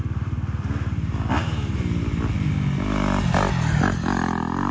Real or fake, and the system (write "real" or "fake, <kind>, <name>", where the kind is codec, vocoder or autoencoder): real